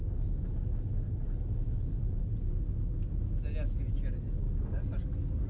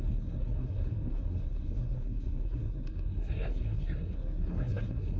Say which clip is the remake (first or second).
second